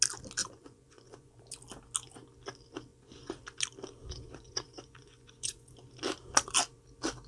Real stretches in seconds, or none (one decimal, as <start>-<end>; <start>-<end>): 0.0-0.4; 1.4-2.9; 3.4-4.0; 5.7-7.3